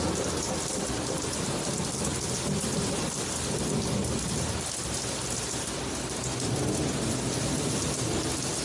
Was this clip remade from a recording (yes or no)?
no